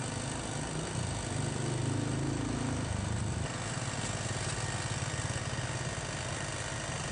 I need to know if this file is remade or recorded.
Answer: recorded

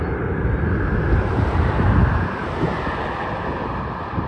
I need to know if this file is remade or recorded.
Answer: recorded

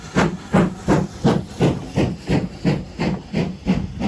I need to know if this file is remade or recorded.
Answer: recorded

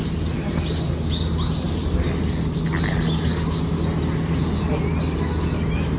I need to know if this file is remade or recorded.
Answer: recorded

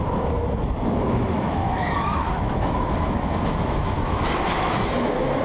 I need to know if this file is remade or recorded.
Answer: remade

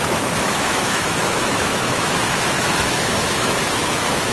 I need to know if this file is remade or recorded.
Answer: remade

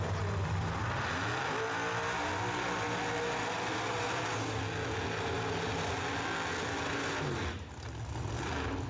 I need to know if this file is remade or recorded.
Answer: recorded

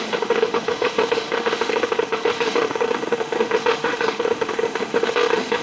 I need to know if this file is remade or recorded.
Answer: remade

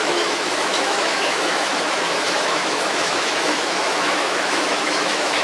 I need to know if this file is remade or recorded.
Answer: remade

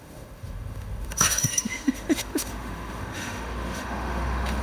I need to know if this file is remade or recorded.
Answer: remade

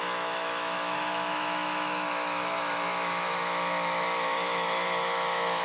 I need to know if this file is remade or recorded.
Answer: remade